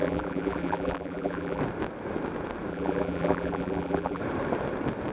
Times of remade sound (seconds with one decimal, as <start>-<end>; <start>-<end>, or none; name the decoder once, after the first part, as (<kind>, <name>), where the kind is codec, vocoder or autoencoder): 0.0-1.6 (vocoder, BigVGAN v2); 2.7-4.2